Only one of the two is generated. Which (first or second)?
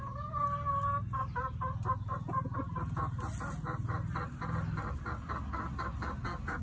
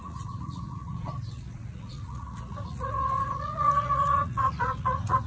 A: second